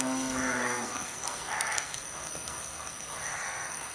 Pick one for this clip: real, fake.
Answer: fake